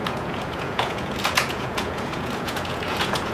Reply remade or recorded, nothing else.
remade